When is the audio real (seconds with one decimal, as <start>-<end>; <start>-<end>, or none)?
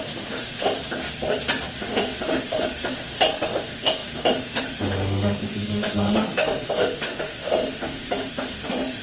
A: 0.8-1.8